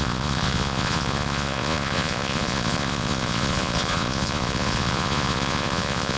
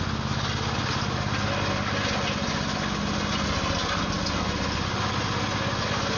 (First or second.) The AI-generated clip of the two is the first